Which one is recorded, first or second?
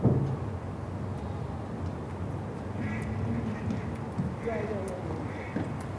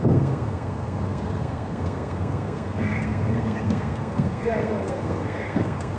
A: first